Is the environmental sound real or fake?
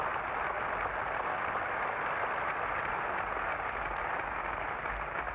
real